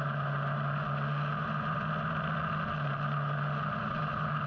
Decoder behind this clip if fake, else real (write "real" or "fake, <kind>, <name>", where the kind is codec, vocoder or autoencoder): real